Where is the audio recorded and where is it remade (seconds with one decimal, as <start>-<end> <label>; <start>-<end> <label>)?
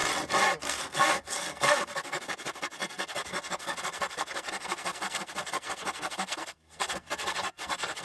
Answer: 0.0-0.6 recorded; 0.6-8.0 remade